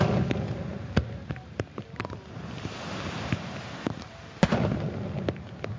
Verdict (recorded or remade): recorded